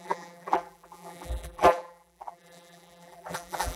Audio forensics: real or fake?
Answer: fake